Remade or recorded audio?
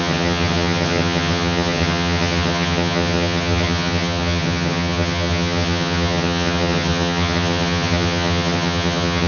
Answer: remade